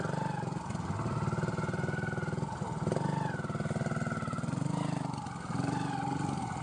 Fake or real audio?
real